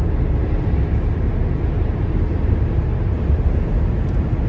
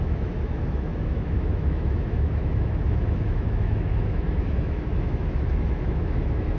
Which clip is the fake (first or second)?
second